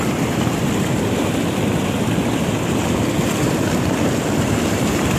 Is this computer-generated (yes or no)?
no